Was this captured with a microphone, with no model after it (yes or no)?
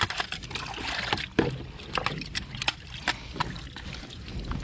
yes